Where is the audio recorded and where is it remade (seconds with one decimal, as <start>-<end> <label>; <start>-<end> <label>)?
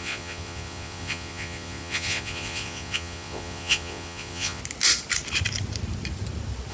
0.0-4.6 remade; 4.6-6.7 recorded